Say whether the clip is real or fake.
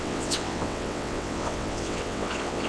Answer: fake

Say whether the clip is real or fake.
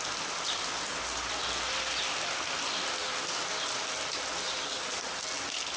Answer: real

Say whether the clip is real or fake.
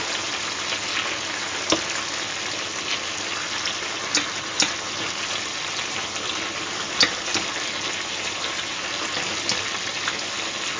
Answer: real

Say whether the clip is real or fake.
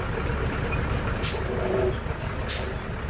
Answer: real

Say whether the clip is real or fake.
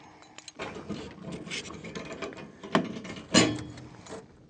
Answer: real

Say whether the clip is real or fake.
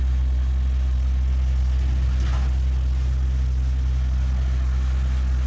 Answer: real